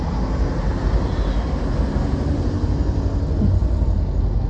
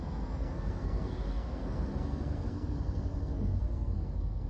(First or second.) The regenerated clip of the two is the second